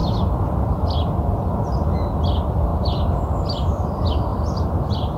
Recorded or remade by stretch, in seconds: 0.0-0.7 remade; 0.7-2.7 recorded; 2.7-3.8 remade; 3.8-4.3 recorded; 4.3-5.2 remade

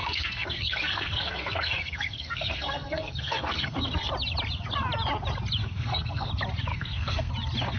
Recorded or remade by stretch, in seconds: 0.0-4.1 remade; 4.1-5.6 recorded; 5.6-6.3 remade; 6.3-6.7 recorded; 6.7-7.3 remade; 7.3-7.8 recorded